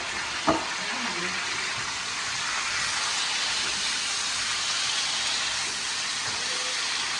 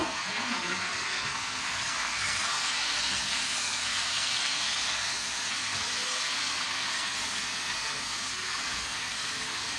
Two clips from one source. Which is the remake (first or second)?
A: second